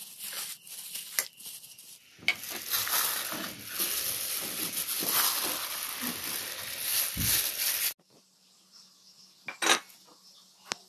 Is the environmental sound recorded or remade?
recorded